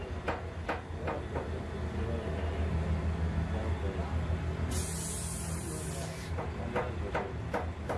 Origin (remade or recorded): recorded